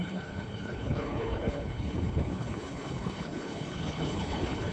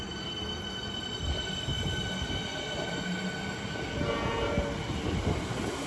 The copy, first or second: first